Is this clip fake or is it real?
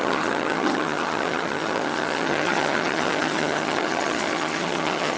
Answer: fake